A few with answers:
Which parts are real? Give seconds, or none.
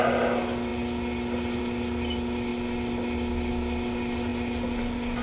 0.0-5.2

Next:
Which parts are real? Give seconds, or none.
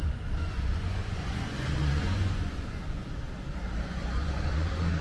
3.0-3.8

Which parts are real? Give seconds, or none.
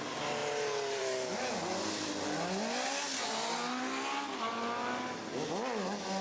0.0-6.2